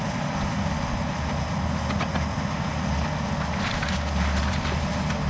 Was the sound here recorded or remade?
recorded